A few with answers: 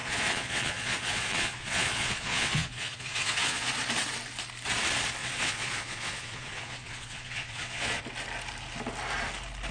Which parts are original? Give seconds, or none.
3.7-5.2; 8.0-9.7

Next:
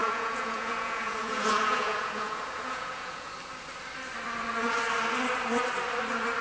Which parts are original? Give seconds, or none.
3.3-6.4

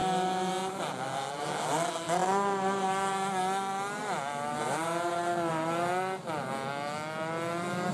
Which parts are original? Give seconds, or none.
0.0-7.9

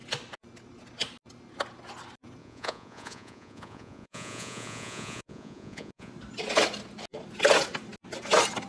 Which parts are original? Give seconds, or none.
0.0-2.4; 6.1-8.7